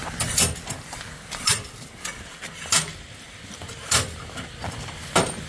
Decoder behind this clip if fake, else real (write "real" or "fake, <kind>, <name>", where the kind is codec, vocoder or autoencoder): real